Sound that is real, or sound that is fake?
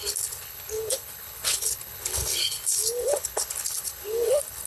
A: fake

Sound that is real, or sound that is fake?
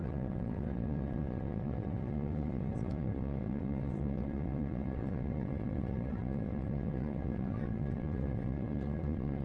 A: fake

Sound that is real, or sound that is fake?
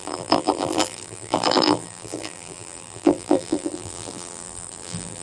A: fake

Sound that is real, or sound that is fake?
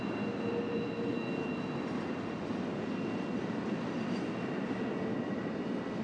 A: real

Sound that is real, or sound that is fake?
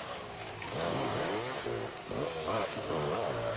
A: fake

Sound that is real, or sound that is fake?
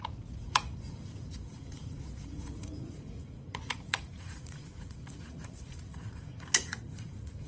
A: fake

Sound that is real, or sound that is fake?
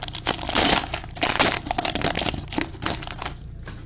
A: real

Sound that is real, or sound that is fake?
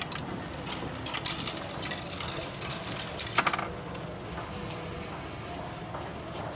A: real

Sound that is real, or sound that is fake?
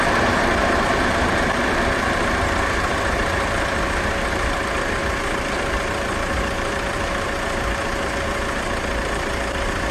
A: fake